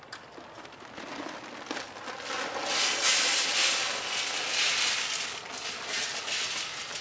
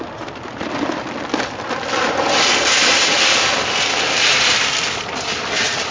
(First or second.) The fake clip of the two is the second